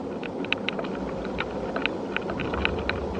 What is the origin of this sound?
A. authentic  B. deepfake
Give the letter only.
A